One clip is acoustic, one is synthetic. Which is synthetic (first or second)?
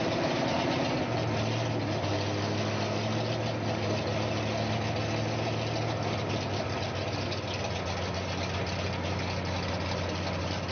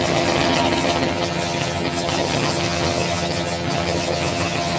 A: second